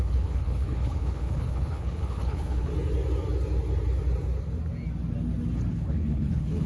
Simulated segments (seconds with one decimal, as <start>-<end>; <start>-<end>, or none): 0.0-2.7; 5.7-6.7